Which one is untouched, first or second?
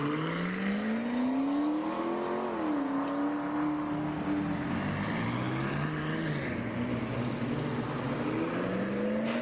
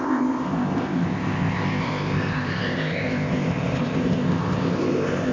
first